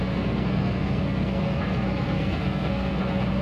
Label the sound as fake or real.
fake